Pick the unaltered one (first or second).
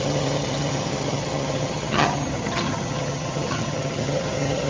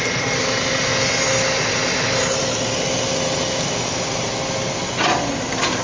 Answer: second